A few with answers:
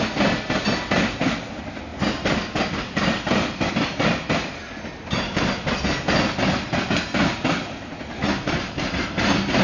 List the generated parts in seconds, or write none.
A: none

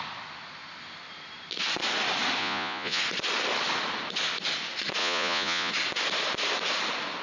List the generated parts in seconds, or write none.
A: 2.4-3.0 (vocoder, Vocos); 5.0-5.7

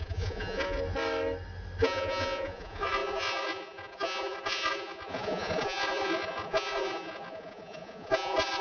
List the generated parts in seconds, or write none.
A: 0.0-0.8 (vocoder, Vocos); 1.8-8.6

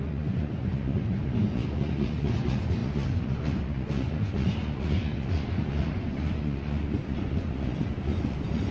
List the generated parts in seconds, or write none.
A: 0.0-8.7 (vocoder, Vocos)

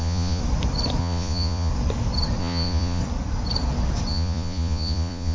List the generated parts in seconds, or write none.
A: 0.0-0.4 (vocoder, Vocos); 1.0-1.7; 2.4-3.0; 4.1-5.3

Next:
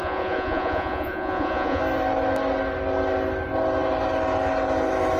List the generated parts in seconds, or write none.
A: 0.0-1.8 (vocoder, Vocos)

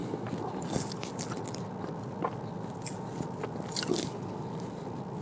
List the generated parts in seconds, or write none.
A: none

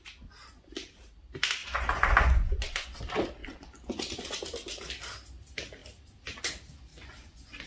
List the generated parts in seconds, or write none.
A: 1.6-3.0 (vocoder, Vocos); 3.4-4.0; 6.9-7.7